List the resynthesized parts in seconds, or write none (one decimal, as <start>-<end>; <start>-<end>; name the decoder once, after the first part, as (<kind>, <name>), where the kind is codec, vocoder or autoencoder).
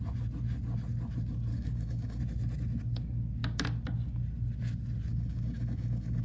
1.5-2.2 (codec, DAC); 5.1-6.2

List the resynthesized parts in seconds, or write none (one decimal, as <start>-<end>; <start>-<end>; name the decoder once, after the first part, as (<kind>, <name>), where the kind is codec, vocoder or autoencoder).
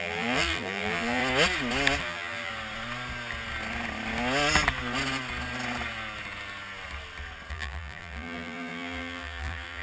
0.0-1.2 (vocoder, BigVGAN v2); 2.0-2.5; 7.5-9.8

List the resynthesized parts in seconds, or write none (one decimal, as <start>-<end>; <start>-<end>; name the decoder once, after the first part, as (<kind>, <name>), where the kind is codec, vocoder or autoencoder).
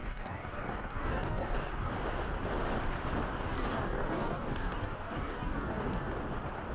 0.0-1.9 (codec, DAC); 3.5-6.1